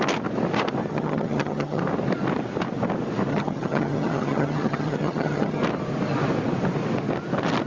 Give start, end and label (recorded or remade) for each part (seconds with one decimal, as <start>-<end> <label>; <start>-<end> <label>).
0.0-0.9 recorded; 0.9-1.8 remade; 1.8-3.3 recorded; 3.3-5.6 remade; 5.6-7.7 recorded